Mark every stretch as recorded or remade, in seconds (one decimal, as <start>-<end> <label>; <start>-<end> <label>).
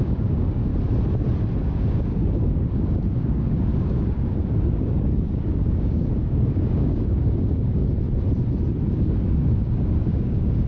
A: 0.0-0.7 remade; 0.7-1.6 recorded; 1.6-7.8 remade; 7.8-8.9 recorded; 8.9-10.7 remade